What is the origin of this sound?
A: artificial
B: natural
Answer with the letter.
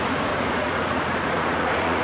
A